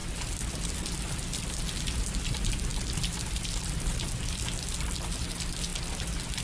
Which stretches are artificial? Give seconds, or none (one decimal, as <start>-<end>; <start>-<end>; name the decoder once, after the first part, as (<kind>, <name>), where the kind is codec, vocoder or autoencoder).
0.0-1.1 (vocoder, BigVGAN v2)